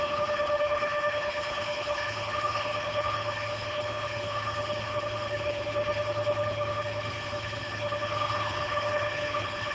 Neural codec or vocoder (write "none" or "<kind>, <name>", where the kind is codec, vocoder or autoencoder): codec, HILCodec